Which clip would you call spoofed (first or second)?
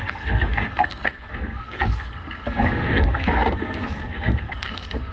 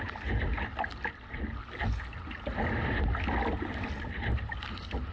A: first